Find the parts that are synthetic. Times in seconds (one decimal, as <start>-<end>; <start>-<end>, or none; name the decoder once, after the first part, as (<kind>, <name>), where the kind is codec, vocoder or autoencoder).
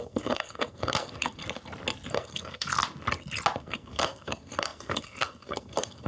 0.0-1.4 (codec, SNAC); 2.1-2.7; 3.6-6.1